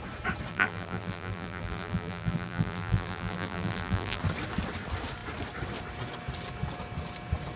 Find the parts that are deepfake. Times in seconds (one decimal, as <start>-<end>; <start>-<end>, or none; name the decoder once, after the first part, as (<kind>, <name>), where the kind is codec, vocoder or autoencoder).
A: 0.5-4.2 (vocoder, BigVGAN v2)